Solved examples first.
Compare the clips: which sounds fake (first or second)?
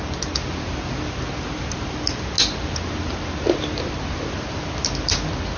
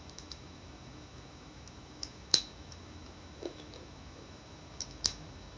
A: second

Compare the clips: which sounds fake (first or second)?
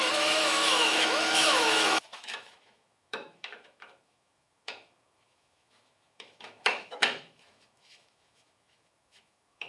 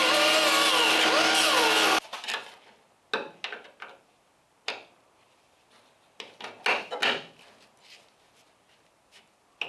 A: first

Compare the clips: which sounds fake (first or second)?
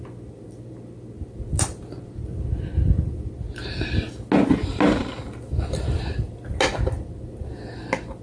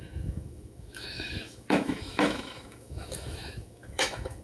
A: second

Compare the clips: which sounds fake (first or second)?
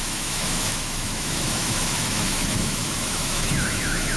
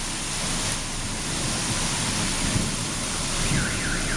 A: first